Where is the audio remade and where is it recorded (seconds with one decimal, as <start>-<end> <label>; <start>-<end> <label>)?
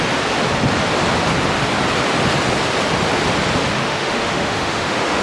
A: 0.0-3.8 recorded; 3.8-5.2 remade